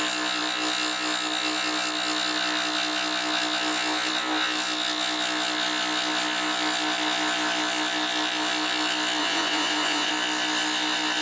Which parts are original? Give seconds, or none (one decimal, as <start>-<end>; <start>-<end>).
0.0-9.2; 10.1-11.2